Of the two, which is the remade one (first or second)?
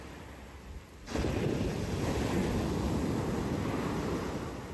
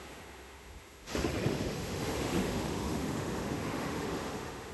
second